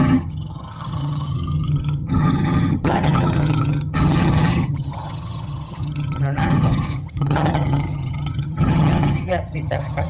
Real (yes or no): no